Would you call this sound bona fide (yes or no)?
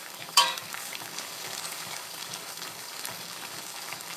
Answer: no